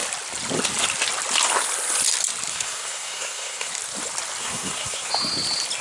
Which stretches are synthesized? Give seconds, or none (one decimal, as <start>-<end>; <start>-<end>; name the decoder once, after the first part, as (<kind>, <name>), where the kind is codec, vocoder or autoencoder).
2.5-3.7 (codec, SNAC); 4.4-5.1